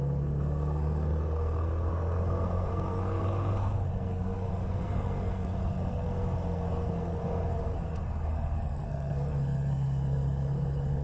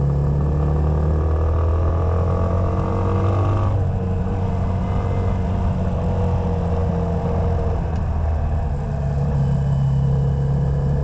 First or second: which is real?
second